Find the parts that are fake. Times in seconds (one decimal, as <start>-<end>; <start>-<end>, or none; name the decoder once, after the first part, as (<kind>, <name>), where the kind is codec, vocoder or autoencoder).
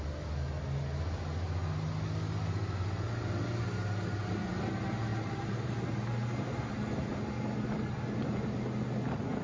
5.1-5.7 (vocoder, BigVGAN v2)